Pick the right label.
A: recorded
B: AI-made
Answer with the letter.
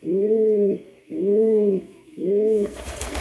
B